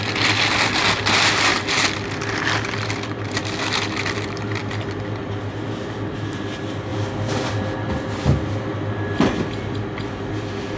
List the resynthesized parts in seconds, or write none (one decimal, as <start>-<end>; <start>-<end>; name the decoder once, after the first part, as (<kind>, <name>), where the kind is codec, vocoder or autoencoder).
none